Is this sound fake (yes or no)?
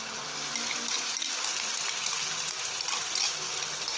no